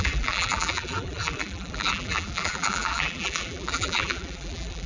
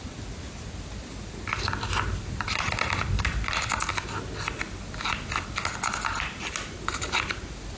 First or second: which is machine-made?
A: first